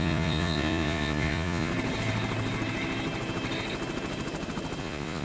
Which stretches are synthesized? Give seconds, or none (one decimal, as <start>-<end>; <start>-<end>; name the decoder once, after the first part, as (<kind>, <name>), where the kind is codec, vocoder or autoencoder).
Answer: 0.0-1.7 (vocoder, Vocos); 4.8-5.2